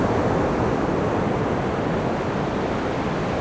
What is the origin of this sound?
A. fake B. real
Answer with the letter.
B